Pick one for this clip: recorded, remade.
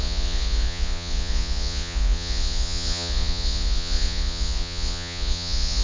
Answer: remade